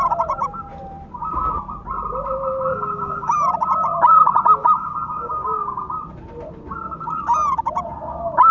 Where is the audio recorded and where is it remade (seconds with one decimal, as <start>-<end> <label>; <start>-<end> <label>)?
0.0-2.7 recorded; 2.7-3.3 remade; 3.3-4.6 recorded; 4.6-5.5 remade; 5.5-8.5 recorded